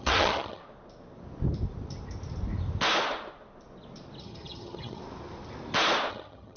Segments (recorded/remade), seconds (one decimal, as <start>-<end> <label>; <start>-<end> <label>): 0.0-0.6 remade; 0.6-4.2 recorded; 4.2-5.0 remade; 5.0-6.1 recorded; 6.1-6.6 remade